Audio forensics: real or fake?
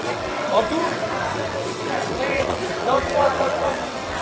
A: fake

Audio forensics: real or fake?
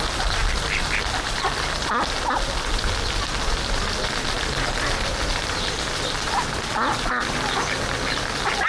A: real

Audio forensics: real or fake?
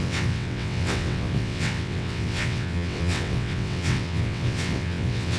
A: fake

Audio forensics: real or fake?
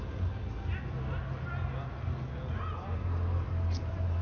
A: real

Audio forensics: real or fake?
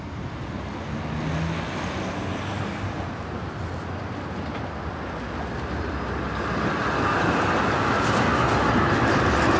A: real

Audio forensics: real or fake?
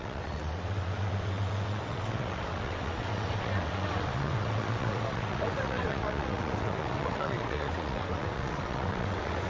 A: fake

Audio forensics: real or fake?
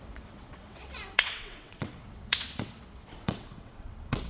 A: fake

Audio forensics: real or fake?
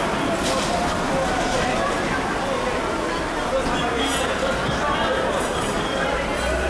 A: real